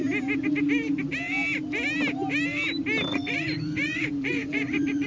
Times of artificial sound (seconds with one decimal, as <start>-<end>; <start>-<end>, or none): 3.1-5.1